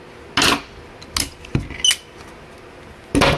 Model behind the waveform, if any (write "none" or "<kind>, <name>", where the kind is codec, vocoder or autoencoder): none